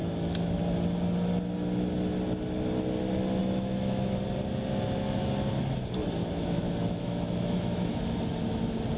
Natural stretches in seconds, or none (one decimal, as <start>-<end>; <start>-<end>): 0.6-3.4; 4.2-6.2; 8.0-9.0

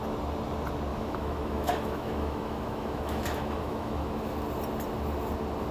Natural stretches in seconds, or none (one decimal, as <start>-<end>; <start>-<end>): 0.0-0.9; 4.3-5.7

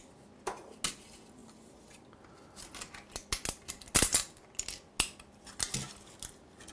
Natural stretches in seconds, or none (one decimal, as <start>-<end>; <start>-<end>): 0.0-6.7

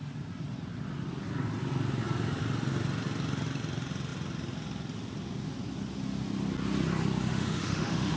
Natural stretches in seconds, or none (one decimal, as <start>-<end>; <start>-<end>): 0.0-7.3

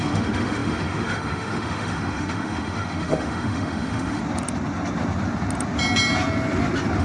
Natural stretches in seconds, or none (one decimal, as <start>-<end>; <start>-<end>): 4.2-7.0

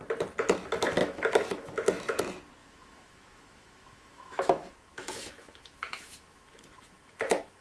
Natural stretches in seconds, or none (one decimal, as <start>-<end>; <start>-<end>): 0.0-1.0; 2.2-2.6

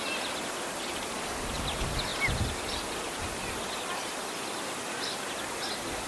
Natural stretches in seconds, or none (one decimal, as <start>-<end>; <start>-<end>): 0.0-6.1

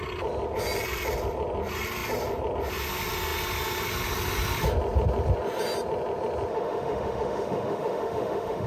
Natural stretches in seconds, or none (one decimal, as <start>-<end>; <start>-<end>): 0.0-6.5